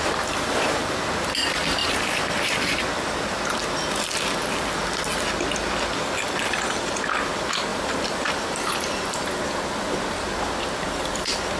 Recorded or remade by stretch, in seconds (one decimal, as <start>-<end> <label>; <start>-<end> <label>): 0.0-1.8 recorded; 1.8-2.8 remade; 2.8-7.7 recorded; 7.7-9.4 remade; 9.4-11.6 recorded